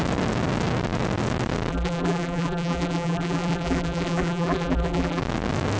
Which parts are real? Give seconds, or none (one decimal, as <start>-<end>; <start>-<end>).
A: 0.0-1.7; 5.2-5.8